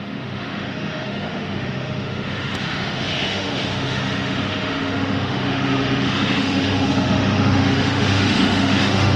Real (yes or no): no